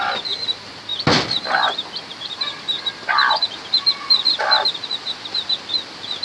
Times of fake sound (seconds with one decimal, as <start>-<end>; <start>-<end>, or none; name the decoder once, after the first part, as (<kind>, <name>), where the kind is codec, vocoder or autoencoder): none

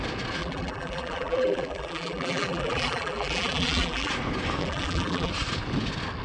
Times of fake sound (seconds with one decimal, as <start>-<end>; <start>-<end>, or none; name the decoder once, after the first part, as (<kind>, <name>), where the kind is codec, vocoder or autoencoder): 0.4-4.1 (vocoder, BigVGAN v2); 4.6-5.3

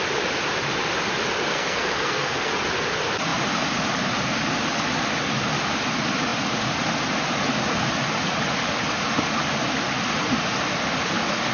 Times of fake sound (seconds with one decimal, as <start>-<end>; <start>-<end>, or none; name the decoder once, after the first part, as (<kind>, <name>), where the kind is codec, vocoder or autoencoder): 1.5-2.5 (codec, SNAC)

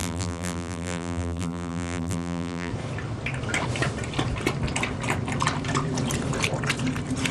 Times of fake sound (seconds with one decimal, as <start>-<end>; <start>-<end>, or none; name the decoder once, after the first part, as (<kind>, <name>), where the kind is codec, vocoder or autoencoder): 0.0-2.7 (vocoder, BigVGAN v2)

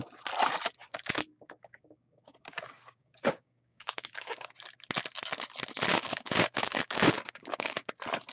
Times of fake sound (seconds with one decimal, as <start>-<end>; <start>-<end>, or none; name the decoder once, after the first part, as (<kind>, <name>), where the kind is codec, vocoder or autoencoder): 0.8-4.5 (codec, DAC); 5.9-7.9